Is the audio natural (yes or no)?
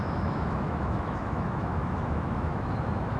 no